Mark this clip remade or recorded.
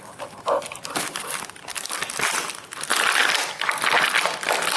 recorded